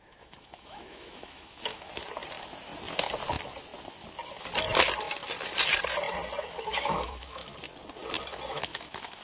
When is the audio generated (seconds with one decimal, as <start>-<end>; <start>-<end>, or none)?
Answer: 0.0-1.9; 6.4-7.4; 8.5-9.2